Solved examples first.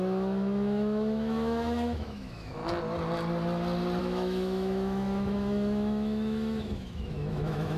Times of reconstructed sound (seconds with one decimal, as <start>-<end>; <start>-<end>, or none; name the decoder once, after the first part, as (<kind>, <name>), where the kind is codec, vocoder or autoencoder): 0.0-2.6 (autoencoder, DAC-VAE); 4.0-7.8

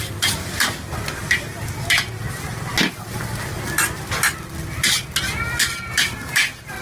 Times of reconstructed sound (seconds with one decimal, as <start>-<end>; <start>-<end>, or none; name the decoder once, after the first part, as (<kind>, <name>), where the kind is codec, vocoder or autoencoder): none

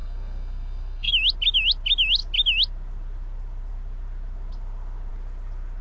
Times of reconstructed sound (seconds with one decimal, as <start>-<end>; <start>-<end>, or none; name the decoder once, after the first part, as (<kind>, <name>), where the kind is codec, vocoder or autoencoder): 0.0-1.1 (codec, SNAC)

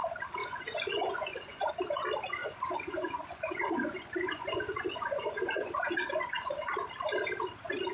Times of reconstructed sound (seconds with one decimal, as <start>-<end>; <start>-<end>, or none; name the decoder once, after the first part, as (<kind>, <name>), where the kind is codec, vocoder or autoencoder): 0.4-1.7 (vocoder, Vocos); 2.4-6.7

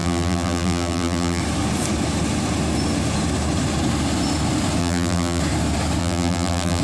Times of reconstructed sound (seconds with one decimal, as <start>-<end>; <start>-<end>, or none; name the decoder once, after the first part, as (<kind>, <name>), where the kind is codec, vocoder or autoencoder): 0.0-1.4 (vocoder, BigVGAN v2); 4.8-5.4; 6.0-6.8